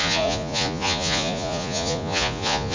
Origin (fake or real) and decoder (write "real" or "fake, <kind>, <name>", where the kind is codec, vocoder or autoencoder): fake, vocoder, Vocos